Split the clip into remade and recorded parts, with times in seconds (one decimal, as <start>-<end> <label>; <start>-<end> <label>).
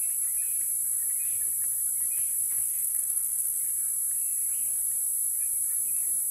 0.0-2.7 recorded; 2.7-3.6 remade; 3.6-6.3 recorded